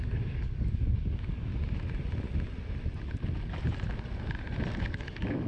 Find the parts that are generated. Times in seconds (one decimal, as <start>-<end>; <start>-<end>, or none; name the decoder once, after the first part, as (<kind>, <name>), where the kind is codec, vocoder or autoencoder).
0.0-1.5 (codec, DAC); 4.8-5.5